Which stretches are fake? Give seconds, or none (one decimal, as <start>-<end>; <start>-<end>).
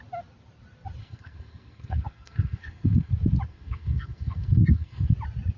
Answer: 1.0-3.1; 3.5-5.1